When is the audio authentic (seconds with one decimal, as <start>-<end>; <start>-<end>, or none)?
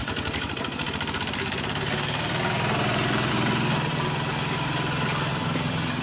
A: 3.3-3.9; 4.7-5.3